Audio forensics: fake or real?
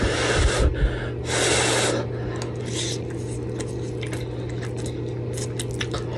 real